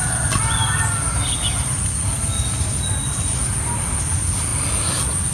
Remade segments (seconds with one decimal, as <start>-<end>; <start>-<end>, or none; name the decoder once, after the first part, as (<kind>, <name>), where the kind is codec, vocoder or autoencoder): none